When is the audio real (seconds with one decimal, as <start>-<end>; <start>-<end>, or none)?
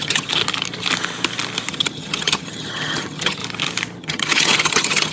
0.4-1.7; 3.4-4.0